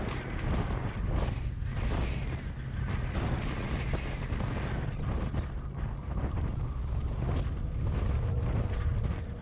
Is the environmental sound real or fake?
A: real